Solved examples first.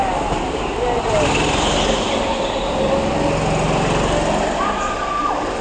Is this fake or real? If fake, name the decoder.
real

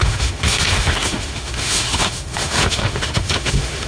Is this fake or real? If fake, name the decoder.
fake, autoencoder, DAC-VAE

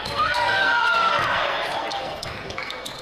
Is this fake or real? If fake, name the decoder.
fake, codec, SNAC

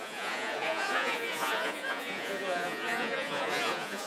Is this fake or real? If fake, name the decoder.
fake, vocoder, Vocos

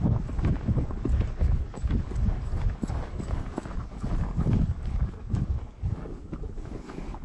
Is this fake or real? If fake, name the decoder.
fake, codec, DAC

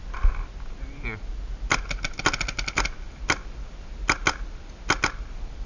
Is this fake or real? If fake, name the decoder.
real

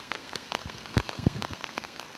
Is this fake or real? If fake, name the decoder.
fake, codec, SNAC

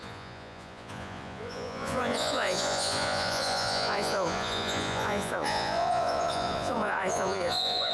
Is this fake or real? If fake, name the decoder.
fake, vocoder, Vocos